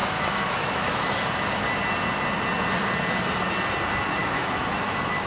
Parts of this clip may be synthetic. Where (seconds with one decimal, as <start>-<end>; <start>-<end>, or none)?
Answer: 0.0-1.2; 4.2-4.7